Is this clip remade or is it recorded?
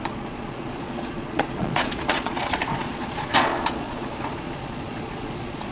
remade